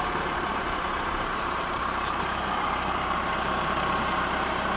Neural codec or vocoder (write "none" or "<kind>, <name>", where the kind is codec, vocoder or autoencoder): vocoder, BigVGAN v2